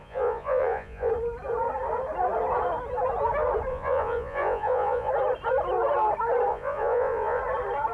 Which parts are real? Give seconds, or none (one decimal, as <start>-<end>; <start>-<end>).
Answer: 1.1-3.7; 5.1-6.5; 7.4-7.9